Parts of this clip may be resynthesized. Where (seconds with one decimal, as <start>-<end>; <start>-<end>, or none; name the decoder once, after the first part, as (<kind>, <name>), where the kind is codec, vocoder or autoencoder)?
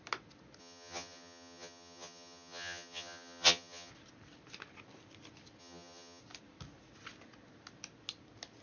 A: 0.6-3.9 (vocoder, HiFi-GAN); 5.6-6.2